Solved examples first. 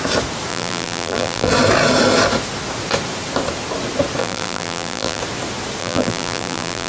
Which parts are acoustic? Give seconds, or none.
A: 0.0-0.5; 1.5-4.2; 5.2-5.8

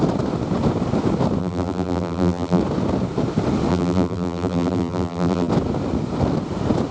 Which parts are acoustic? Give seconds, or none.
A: 0.0-1.4; 2.6-3.7; 5.5-6.9

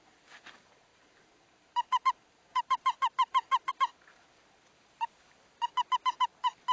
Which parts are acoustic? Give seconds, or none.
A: 0.0-0.9; 3.7-6.7

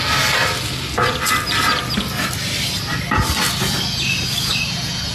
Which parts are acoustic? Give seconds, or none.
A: 0.0-0.4; 2.3-5.1

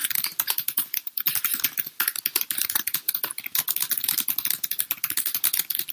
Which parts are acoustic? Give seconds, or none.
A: 1.2-5.9

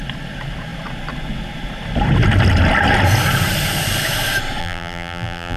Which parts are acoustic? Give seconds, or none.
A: 0.0-4.6

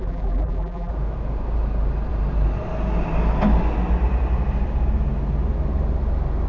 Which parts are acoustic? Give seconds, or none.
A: 0.9-6.5